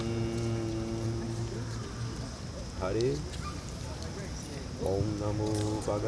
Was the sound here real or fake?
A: real